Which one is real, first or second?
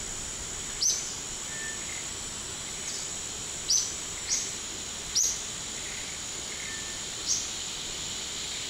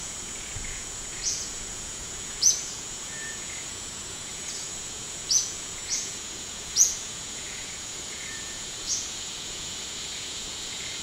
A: first